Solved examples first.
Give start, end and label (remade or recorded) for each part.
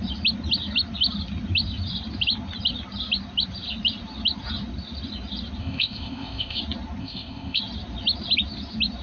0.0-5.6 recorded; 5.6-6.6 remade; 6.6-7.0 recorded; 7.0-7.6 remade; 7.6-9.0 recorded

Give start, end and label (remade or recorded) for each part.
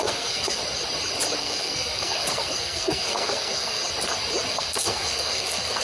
0.0-0.6 remade; 0.6-1.4 recorded; 1.4-3.8 remade; 3.8-4.5 recorded; 4.5-5.8 remade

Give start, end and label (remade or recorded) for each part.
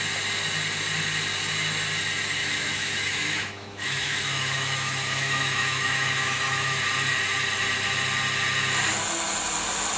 0.0-2.4 recorded; 2.4-6.8 remade; 6.8-10.0 recorded